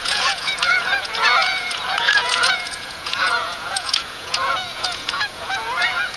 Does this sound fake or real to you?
fake